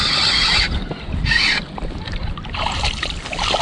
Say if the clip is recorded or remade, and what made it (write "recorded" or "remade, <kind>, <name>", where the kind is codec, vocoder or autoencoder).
remade, vocoder, BigVGAN v2